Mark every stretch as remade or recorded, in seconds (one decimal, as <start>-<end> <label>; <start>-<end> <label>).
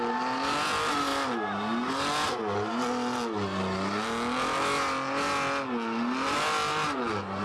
0.0-7.4 recorded